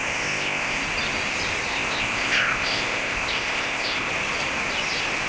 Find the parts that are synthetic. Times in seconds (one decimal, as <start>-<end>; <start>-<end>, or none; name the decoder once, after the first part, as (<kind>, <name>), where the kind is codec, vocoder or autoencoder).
0.0-0.8 (codec, ZipCodec); 1.7-4.1

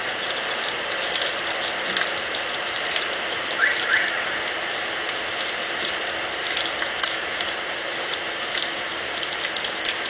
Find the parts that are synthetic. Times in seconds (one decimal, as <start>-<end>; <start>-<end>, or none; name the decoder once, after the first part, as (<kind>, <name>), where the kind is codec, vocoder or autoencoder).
0.0-10.1 (vocoder, BigVGAN v2)

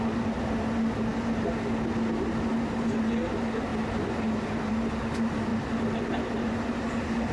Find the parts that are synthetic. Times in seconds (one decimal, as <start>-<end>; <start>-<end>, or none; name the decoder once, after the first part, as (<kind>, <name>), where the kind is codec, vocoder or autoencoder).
none